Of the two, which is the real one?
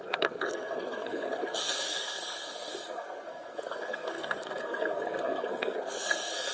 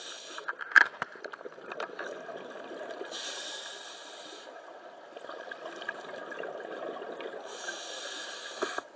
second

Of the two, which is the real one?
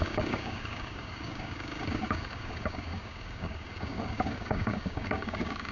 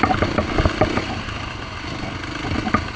second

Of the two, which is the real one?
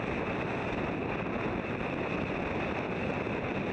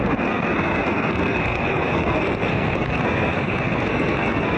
first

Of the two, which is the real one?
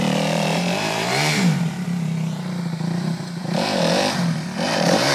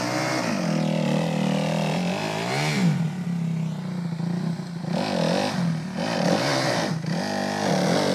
second